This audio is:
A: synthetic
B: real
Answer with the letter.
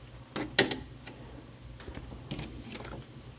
B